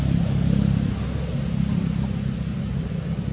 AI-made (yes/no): no